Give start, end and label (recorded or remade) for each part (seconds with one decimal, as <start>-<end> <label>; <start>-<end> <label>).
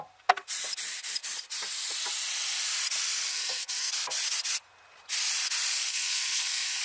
0.0-3.3 recorded; 3.3-3.9 remade; 3.9-5.9 recorded; 5.9-6.8 remade